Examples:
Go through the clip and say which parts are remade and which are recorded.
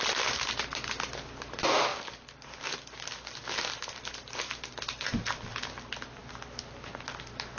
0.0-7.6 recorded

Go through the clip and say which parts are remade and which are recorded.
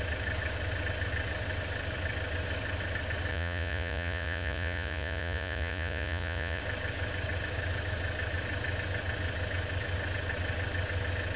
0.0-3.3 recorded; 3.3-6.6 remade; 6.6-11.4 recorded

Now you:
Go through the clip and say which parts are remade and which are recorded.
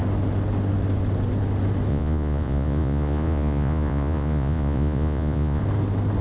0.0-1.9 recorded; 1.9-5.6 remade; 5.6-6.2 recorded